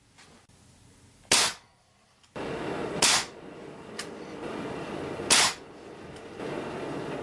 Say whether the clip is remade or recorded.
recorded